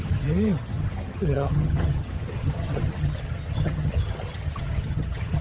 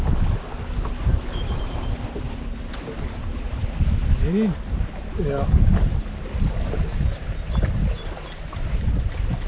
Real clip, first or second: second